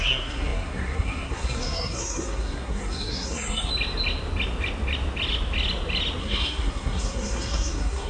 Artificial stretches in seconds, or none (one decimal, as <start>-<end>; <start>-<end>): 0.0-3.7; 6.2-8.1